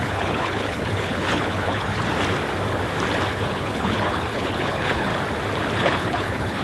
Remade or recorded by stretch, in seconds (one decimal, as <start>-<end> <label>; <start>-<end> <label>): 0.0-2.1 remade; 2.1-3.3 recorded; 3.3-5.1 remade; 5.1-5.8 recorded; 5.8-6.6 remade